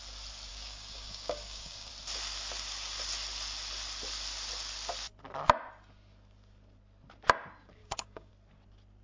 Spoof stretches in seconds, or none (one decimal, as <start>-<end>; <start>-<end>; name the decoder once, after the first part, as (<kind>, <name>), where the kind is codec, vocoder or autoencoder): 0.5-1.9 (codec, DAC); 7.8-8.3